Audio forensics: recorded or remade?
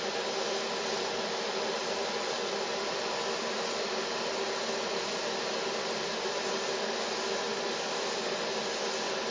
recorded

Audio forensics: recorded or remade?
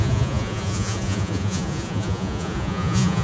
remade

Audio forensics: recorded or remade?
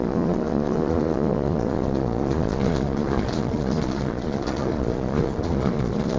remade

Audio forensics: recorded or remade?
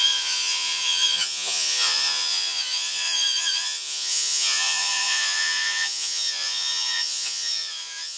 remade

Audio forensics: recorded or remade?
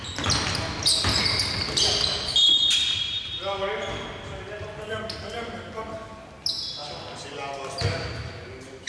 recorded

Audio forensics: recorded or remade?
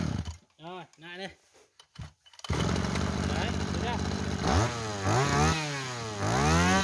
recorded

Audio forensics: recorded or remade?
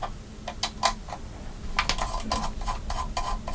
recorded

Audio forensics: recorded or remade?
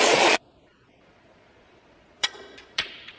remade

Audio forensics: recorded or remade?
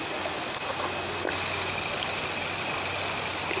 recorded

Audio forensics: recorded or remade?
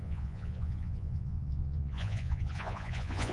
remade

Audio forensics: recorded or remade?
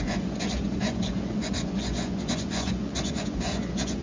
remade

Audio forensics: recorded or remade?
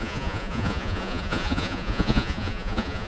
remade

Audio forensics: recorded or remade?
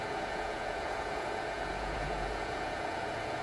remade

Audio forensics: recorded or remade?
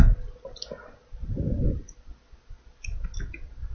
recorded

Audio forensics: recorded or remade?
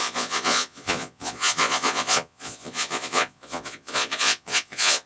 remade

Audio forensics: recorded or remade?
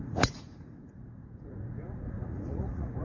remade